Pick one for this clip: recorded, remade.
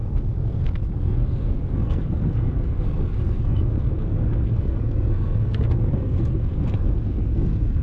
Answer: remade